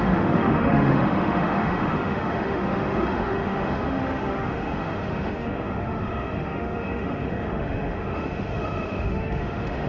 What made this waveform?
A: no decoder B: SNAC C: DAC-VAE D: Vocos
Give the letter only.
C